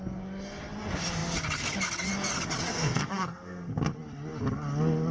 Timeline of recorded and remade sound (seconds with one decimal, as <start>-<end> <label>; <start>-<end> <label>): 0.0-2.7 recorded; 2.7-3.7 remade; 3.7-5.1 recorded